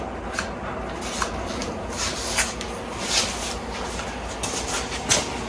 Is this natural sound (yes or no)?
yes